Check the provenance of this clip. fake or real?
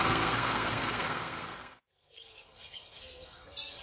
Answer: fake